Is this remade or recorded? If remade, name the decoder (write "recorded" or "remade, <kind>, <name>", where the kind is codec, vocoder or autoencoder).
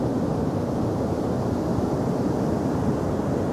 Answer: recorded